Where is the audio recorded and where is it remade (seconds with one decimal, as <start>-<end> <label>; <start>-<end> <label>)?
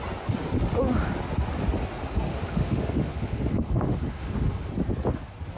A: 0.0-2.3 recorded; 2.3-4.7 remade; 4.7-5.6 recorded